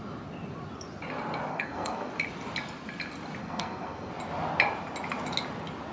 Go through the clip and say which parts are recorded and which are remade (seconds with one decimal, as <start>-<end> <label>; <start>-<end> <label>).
0.0-1.5 recorded; 1.5-2.1 remade; 2.1-3.4 recorded; 3.4-4.1 remade; 4.1-5.9 recorded